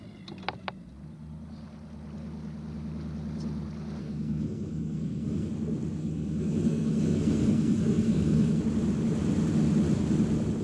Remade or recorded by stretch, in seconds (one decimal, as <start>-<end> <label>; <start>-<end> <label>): 0.0-4.0 recorded; 4.0-5.5 remade; 5.5-6.0 recorded; 6.0-8.6 remade; 8.6-10.6 recorded